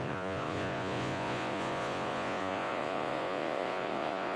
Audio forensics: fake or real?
fake